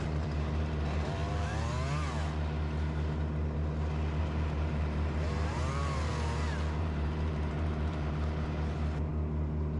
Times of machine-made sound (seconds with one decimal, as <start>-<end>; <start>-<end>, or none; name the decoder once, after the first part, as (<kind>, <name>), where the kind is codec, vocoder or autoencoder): 0.0-1.5 (vocoder, BigVGAN v2); 4.2-6.1; 6.8-9.1